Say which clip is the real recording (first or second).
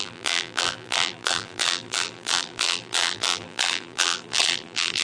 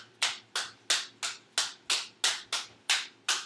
second